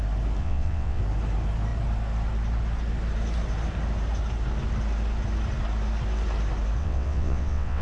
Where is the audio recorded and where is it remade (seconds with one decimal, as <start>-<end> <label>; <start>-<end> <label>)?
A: 0.0-0.4 recorded; 0.4-1.0 remade; 1.0-6.8 recorded; 6.8-7.8 remade